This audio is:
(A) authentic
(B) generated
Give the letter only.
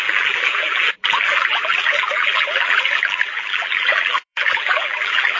B